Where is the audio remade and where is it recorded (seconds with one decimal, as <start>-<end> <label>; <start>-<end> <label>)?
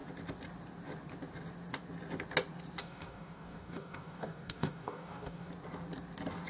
0.0-2.8 recorded; 2.8-5.5 remade; 5.5-6.5 recorded